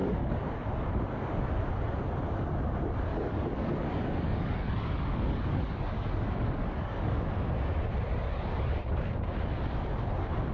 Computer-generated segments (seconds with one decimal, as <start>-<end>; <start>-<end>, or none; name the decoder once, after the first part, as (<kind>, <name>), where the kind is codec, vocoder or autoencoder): 0.0-0.9 (codec, DAC); 3.1-7.3